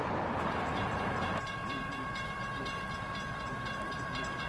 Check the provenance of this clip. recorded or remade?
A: remade